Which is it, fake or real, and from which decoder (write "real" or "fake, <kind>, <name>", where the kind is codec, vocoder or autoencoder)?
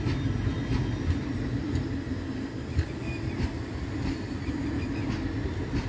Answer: real